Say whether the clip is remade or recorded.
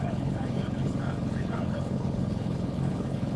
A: remade